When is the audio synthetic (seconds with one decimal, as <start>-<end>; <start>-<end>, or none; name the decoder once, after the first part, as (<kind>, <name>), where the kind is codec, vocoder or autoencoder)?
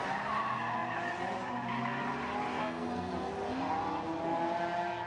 2.5-3.1 (codec, SNAC)